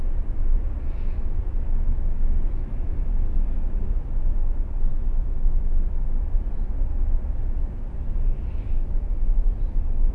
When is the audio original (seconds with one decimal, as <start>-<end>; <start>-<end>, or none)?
0.0-10.1